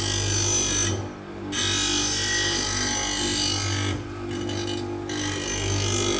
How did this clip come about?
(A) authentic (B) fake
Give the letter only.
A